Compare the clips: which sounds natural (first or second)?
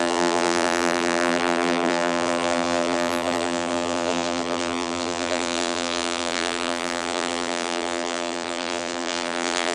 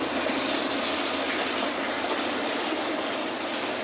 second